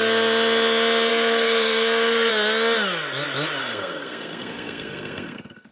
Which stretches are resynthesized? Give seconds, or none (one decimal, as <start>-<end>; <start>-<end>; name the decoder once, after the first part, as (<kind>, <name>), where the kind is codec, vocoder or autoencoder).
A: 1.1-2.3 (codec, SNAC); 3.6-5.7

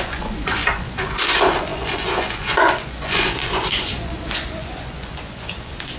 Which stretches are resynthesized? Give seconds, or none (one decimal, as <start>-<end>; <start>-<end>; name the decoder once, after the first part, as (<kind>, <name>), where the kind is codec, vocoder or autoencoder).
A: 0.0-6.0 (vocoder, Vocos)